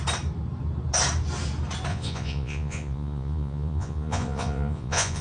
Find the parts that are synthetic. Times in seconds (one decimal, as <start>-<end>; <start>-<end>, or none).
1.9-5.2